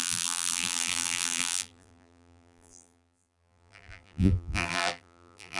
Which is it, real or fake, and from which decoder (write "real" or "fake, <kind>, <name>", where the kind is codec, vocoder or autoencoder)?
fake, vocoder, BigVGAN v2